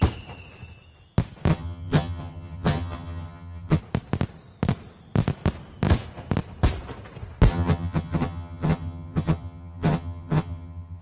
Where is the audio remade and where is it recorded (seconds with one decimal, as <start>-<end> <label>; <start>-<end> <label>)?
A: 0.0-1.5 recorded; 1.5-3.8 remade; 3.8-7.5 recorded; 7.5-11.0 remade